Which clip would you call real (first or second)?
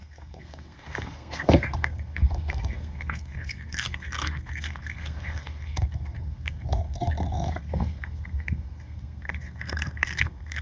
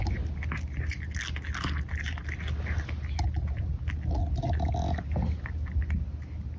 second